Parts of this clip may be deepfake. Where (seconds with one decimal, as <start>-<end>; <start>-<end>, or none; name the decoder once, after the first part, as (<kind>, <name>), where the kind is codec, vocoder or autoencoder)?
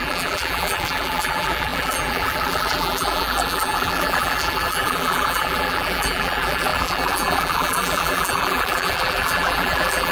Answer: 0.0-10.1 (vocoder, BigVGAN v2)